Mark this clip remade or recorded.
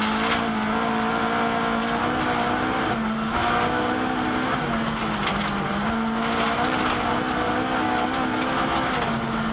recorded